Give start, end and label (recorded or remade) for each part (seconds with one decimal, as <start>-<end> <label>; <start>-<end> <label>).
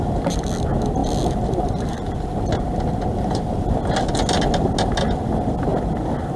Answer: 0.0-3.1 recorded; 3.1-3.7 remade; 3.7-6.4 recorded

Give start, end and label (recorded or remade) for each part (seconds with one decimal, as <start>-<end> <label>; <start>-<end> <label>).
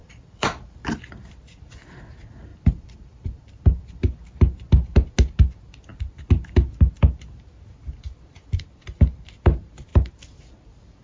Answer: 0.0-1.1 remade; 1.1-2.5 recorded; 2.5-4.0 remade; 4.0-11.0 recorded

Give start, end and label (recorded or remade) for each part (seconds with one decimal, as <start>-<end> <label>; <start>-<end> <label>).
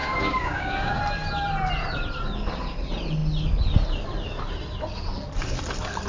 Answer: 0.0-1.0 remade; 1.0-6.1 recorded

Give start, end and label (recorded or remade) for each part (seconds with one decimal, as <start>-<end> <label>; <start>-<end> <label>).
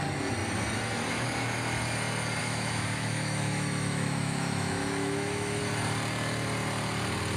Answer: 0.0-2.4 recorded; 2.4-5.6 remade; 5.6-7.4 recorded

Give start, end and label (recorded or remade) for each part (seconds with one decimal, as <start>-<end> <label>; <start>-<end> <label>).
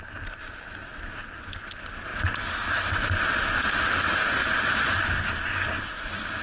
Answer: 0.0-6.4 recorded